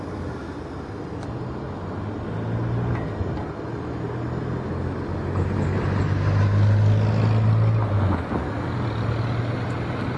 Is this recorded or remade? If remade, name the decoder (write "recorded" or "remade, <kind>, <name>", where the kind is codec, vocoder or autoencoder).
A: recorded